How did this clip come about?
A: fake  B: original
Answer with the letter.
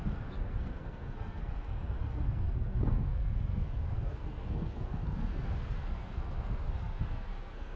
A